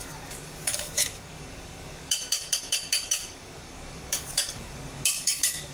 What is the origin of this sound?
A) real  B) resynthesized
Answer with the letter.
B